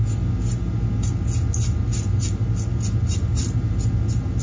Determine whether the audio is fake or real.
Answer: real